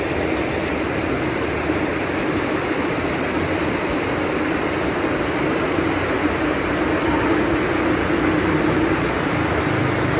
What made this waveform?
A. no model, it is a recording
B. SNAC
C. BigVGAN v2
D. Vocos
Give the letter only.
A